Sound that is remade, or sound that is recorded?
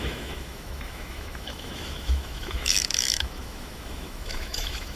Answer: remade